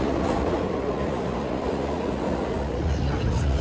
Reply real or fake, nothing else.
fake